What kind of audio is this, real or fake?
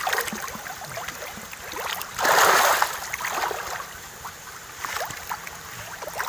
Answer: real